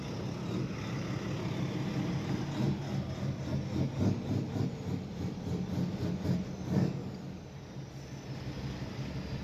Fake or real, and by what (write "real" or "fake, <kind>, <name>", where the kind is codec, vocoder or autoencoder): real